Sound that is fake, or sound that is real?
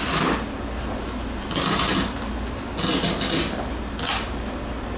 real